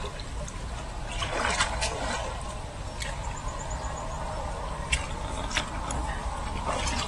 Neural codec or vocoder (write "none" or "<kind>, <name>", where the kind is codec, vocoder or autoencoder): none